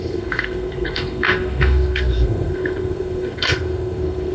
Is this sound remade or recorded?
remade